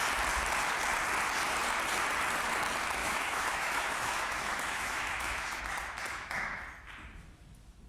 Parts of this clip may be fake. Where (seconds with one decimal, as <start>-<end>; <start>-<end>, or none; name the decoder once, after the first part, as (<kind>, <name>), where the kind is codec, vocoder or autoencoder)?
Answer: 3.0-5.6 (autoencoder, DAC-VAE); 6.1-6.6